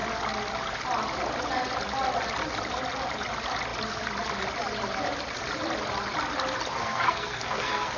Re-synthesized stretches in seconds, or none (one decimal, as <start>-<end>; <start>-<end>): 6.7-8.0